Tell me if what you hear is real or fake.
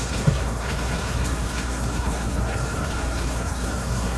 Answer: fake